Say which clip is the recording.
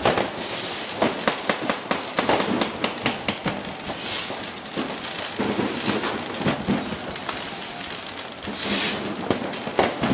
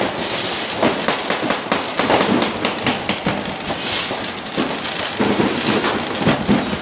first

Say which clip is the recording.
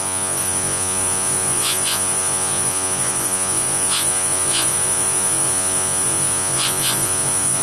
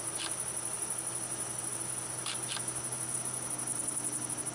second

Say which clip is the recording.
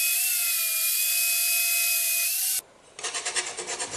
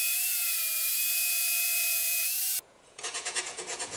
first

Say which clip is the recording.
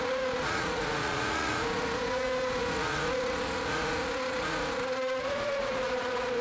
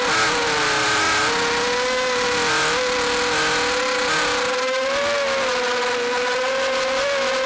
second